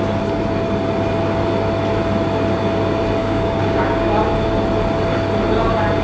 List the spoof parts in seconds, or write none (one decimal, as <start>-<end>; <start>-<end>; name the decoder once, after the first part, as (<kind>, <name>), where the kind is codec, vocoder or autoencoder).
3.2-4.2 (codec, DAC)